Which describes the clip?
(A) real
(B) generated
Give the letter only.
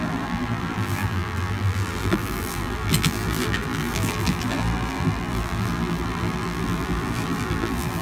B